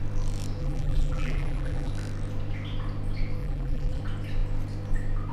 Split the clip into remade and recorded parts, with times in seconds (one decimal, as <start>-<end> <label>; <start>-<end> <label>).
0.0-0.6 recorded; 0.6-1.9 remade; 1.9-3.4 recorded; 3.4-4.0 remade; 4.0-5.3 recorded